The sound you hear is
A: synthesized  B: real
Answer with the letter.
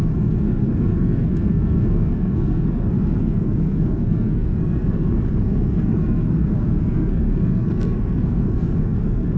A